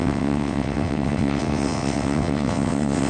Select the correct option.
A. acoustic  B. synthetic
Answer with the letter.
B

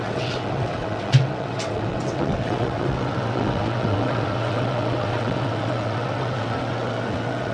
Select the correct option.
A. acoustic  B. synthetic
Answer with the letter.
B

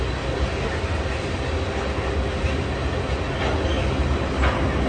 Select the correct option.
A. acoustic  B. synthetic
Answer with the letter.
A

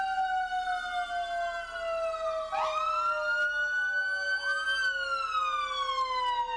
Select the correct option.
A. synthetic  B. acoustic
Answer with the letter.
B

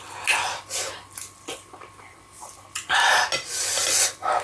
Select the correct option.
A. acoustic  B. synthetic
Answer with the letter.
A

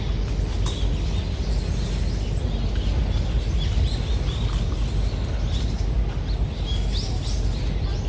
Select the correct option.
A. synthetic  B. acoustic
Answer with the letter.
B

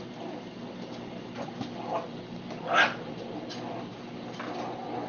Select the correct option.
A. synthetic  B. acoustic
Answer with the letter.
B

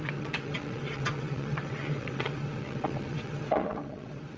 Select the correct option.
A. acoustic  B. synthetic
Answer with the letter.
B